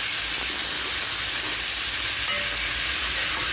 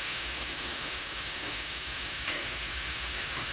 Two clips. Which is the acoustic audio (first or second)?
first